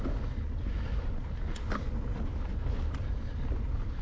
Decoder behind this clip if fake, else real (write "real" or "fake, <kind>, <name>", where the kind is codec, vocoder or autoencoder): real